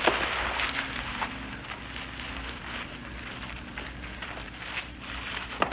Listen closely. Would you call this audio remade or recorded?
recorded